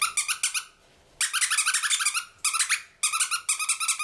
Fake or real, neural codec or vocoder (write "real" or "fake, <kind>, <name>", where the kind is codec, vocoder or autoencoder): real